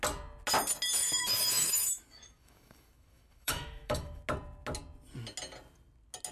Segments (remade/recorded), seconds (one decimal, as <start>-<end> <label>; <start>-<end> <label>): 0.0-1.0 recorded; 1.0-4.2 remade; 4.2-6.3 recorded